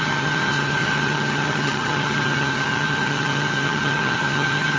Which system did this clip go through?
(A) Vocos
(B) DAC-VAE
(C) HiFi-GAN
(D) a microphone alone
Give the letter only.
C